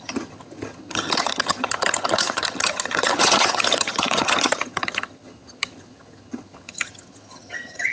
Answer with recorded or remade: remade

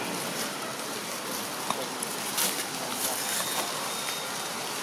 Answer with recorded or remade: recorded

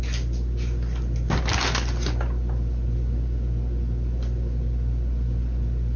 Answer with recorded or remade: recorded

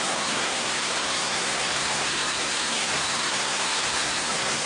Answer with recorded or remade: remade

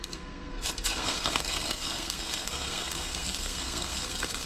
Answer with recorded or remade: remade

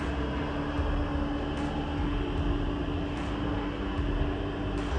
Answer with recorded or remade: recorded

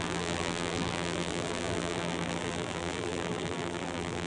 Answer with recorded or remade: remade